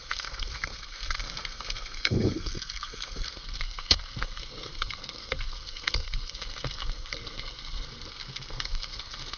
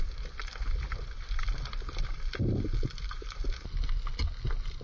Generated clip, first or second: first